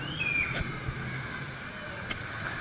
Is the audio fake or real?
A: real